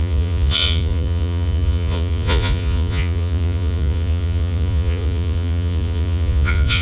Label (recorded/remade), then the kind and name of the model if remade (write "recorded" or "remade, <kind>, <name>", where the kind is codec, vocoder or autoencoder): remade, vocoder, Vocos